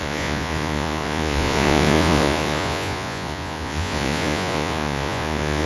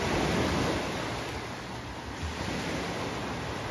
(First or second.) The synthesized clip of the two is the first